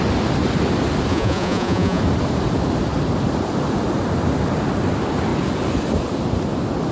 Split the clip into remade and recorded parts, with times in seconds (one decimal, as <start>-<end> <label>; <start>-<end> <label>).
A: 0.0-1.1 recorded; 1.1-2.0 remade; 2.0-6.9 recorded